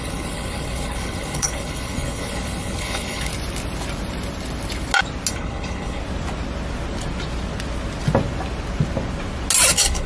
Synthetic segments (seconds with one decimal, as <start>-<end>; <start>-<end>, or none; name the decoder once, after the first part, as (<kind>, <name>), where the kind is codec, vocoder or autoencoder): 0.0-3.3 (codec, HILCodec); 5.3-6.0; 9.7-10.1